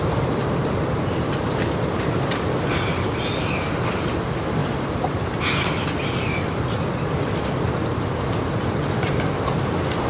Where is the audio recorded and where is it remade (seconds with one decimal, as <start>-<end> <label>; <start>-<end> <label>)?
0.0-10.1 recorded